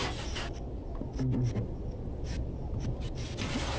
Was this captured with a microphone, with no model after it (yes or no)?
yes